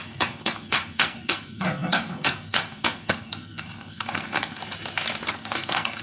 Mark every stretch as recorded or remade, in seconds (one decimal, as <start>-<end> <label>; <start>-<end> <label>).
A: 0.0-4.6 remade; 4.6-5.3 recorded; 5.3-6.0 remade